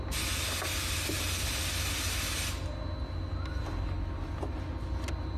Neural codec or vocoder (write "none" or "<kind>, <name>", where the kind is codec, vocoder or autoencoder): none